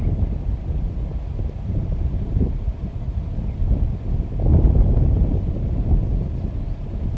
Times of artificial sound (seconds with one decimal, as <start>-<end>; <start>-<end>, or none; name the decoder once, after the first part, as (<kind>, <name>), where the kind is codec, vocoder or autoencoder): 1.1-2.3 (vocoder, BigVGAN v2); 4.5-6.3